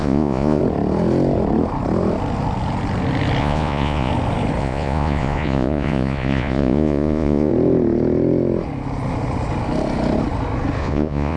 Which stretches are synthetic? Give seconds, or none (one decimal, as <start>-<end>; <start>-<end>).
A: 0.0-0.6; 3.4-4.1; 4.6-7.5; 10.8-11.4